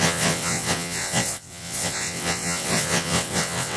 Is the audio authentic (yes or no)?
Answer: no